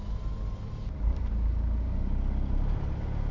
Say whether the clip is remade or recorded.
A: recorded